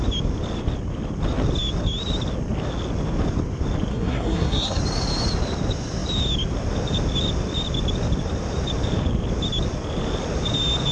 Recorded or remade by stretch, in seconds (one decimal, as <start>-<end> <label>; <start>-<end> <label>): 0.0-3.9 recorded; 3.9-4.8 remade; 4.8-10.9 recorded